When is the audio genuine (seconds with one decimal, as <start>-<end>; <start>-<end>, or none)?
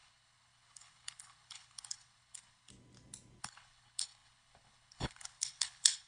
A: 2.7-3.4